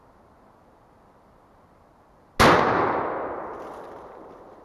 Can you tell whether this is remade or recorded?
recorded